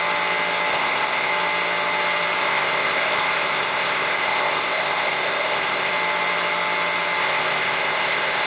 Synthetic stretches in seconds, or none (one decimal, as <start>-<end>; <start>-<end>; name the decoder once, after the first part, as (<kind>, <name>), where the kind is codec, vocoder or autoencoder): 0.7-1.3 (codec, ZipCodec); 2.4-5.9; 7.2-8.5